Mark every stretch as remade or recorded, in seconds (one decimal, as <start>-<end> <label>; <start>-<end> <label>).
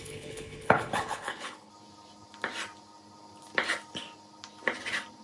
0.0-1.7 remade; 1.7-5.2 recorded